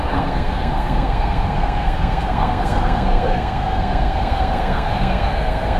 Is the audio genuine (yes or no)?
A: no